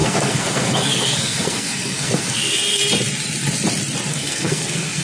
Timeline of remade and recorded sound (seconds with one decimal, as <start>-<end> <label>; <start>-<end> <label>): 0.0-2.8 remade; 2.8-4.1 recorded; 4.1-5.0 remade